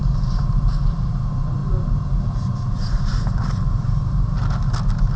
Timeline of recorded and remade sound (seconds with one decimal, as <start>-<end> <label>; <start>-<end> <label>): 0.0-1.1 remade; 1.1-1.6 recorded; 1.6-4.7 remade; 4.7-5.2 recorded